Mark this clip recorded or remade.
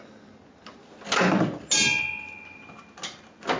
recorded